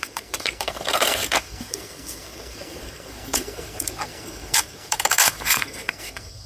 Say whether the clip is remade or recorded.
remade